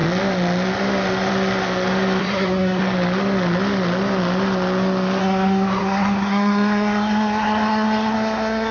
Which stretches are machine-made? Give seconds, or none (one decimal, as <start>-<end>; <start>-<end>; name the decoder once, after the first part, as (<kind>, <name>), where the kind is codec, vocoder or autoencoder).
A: 2.2-2.8 (codec, SNAC); 5.2-8.7